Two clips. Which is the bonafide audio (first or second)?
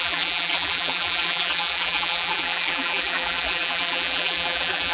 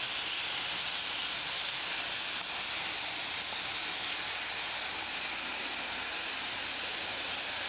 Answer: second